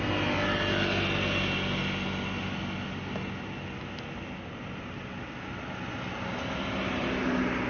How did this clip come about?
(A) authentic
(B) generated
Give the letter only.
A